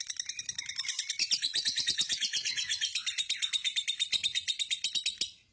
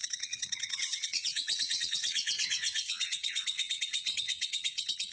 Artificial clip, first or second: second